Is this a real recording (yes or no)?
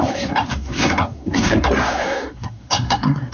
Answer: no